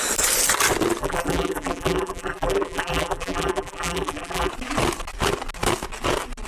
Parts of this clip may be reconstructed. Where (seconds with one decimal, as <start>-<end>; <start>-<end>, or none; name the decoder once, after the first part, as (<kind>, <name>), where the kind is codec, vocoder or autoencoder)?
1.0-4.5 (vocoder, BigVGAN v2)